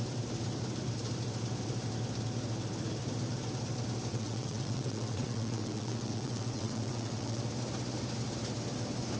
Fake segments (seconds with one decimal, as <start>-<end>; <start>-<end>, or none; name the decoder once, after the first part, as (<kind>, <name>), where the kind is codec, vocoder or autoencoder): 4.1-7.4 (vocoder, WaveNeXt)